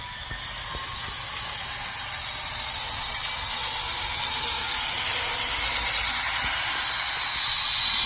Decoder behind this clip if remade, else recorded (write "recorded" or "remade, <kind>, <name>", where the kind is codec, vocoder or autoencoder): recorded